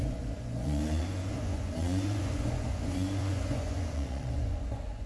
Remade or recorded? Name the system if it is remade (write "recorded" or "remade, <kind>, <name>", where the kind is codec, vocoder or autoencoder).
remade, vocoder, Vocos